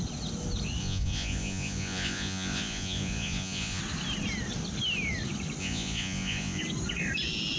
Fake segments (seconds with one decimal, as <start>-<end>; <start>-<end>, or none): 0.8-3.8; 5.6-6.6